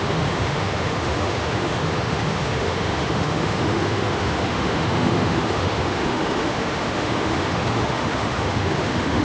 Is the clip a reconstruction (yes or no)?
yes